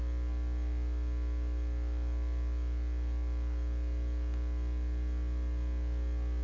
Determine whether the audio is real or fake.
real